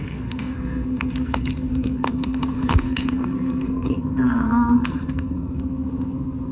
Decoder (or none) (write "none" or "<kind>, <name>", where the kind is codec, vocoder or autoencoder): codec, SNAC